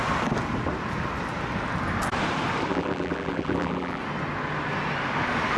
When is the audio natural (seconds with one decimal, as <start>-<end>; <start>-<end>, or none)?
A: 0.0-2.7; 4.0-5.6